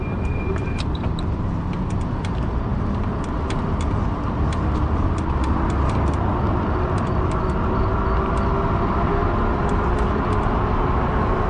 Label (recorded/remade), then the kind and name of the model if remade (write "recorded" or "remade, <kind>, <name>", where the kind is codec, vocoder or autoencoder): recorded